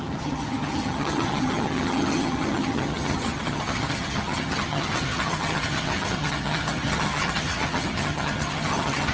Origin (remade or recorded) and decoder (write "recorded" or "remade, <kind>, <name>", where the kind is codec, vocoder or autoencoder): remade, vocoder, HiFi-GAN